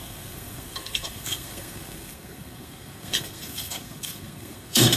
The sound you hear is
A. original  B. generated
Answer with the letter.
B